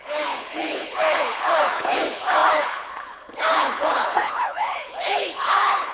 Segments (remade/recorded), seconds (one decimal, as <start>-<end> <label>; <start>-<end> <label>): 0.0-5.9 remade